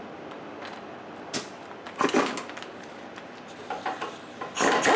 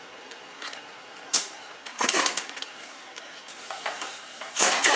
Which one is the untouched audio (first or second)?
first